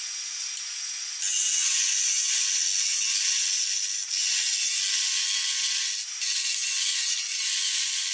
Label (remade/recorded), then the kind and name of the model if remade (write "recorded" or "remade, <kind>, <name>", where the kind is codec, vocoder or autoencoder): recorded